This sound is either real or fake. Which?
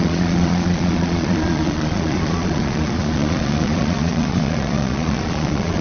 fake